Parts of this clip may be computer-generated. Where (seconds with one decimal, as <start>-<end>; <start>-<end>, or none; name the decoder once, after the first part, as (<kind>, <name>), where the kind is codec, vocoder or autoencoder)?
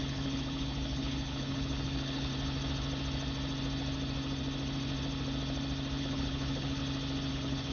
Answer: 0.0-2.3 (codec, HILCodec); 6.0-6.8; 7.3-7.7